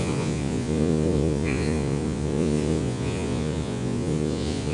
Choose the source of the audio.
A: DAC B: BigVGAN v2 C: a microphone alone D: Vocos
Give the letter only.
D